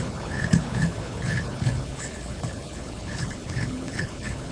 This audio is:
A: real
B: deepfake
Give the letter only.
B